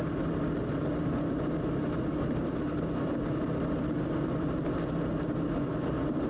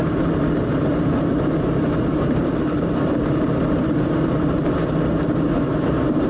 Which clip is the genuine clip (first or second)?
first